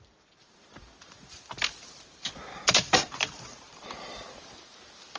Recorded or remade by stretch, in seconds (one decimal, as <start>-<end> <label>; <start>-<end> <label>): 0.0-0.4 recorded; 0.4-1.4 remade; 1.4-2.5 recorded; 2.5-4.0 remade; 4.0-5.2 recorded